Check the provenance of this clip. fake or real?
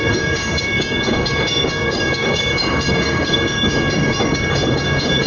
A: fake